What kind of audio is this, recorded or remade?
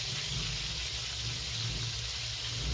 recorded